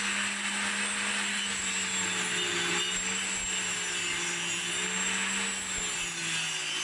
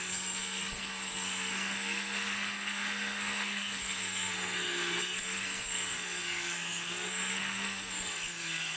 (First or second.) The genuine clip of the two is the first